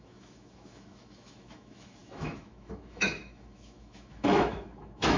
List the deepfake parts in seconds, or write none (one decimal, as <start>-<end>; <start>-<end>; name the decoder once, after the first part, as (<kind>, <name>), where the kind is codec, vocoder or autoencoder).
0.0-5.2 (autoencoder, DAC-VAE)